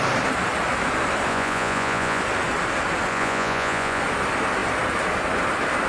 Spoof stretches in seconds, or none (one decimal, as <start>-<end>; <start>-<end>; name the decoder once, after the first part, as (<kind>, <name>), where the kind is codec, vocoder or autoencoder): 1.3-2.2 (vocoder, Vocos); 3.1-4.0